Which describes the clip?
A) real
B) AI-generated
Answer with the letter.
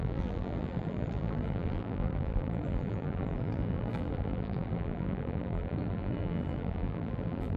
B